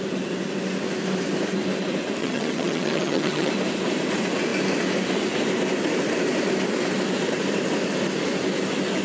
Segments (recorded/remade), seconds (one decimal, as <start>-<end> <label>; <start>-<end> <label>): 0.0-2.2 recorded; 2.2-3.5 remade; 3.5-9.0 recorded